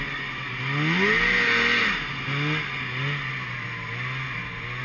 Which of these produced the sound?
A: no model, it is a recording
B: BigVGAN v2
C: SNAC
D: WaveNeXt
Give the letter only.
A